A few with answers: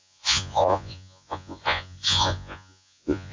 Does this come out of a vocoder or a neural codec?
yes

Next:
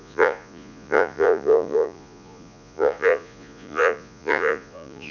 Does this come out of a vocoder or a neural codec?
yes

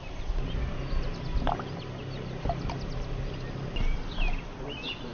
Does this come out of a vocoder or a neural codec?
no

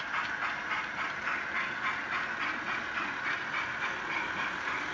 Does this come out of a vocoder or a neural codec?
no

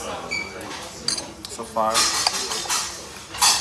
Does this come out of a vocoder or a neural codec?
no